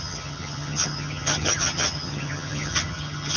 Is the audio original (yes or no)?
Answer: no